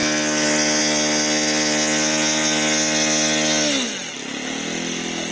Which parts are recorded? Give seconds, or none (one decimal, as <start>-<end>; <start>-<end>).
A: 0.0-5.3